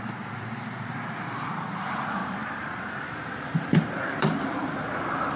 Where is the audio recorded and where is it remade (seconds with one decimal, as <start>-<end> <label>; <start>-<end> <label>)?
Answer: 0.0-5.4 remade